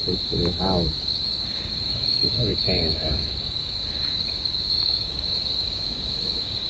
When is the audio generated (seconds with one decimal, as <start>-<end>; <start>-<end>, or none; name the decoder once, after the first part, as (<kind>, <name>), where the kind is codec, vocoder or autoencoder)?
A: 1.0-6.7 (codec, DAC)